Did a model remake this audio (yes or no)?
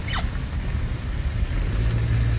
no